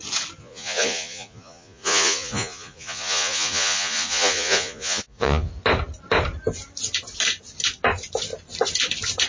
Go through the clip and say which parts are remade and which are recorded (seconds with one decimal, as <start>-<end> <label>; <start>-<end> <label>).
0.0-0.4 recorded; 0.4-5.5 remade; 5.5-9.3 recorded